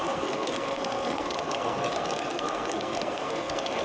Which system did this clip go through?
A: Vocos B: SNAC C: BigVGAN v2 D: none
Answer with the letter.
B